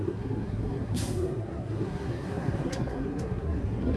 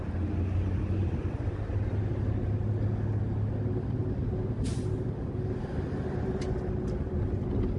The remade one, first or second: first